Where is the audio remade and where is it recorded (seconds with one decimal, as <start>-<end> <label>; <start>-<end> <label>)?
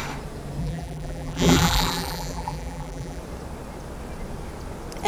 0.0-0.6 recorded; 0.6-3.2 remade; 3.2-5.1 recorded